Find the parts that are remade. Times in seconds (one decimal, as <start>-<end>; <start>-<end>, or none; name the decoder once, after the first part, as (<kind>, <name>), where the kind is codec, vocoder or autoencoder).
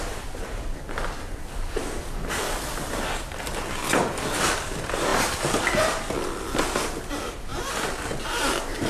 none